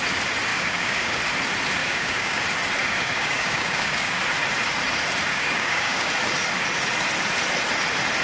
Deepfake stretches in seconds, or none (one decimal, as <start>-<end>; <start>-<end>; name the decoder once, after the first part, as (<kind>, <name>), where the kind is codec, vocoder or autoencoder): 0.5-1.2 (codec, DAC); 1.8-2.4; 2.8-4.2; 5.3-6.1